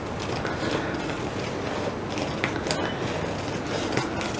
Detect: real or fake real